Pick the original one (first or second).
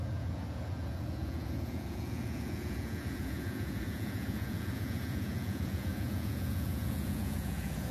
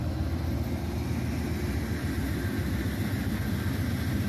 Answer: second